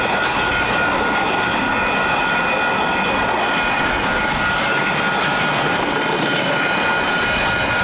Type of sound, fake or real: real